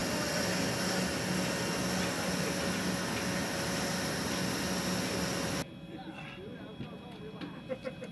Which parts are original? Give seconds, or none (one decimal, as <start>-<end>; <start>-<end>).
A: 0.0-8.1